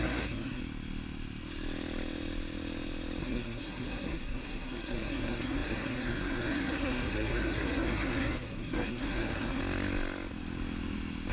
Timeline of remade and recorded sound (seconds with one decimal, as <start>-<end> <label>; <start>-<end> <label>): 0.0-0.6 remade; 0.6-3.2 recorded; 3.2-9.6 remade; 9.6-11.3 recorded